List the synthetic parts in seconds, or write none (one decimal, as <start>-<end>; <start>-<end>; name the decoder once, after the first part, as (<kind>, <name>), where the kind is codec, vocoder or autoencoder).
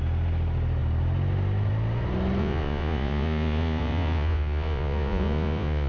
2.4-5.9 (vocoder, Vocos)